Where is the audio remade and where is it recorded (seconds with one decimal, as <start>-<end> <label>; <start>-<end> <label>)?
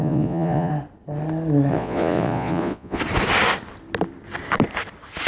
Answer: 0.0-0.7 remade; 0.7-1.7 recorded; 1.7-3.0 remade; 3.0-5.3 recorded